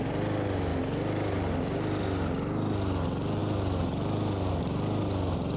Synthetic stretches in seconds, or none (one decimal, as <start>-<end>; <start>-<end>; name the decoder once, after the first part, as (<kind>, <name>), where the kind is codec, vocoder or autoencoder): none